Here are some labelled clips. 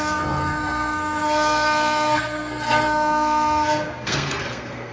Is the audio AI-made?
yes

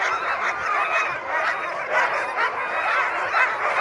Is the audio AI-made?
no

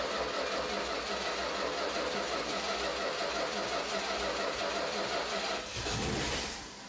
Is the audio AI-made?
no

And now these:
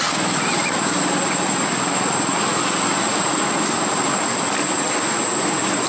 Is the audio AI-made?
no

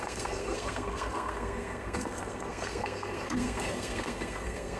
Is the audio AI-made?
yes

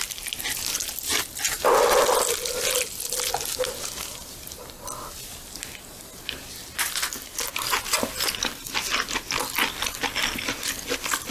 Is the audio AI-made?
no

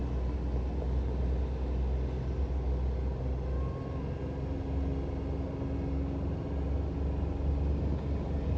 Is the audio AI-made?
no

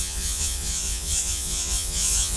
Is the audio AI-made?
yes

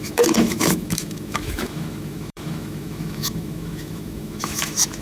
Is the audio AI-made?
yes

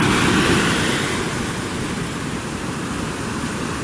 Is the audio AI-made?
no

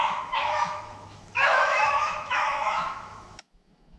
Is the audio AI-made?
yes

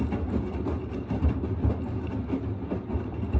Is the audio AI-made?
no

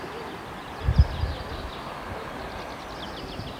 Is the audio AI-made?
no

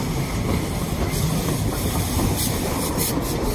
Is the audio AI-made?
yes